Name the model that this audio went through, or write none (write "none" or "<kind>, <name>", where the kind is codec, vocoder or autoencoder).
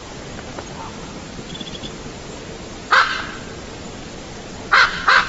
none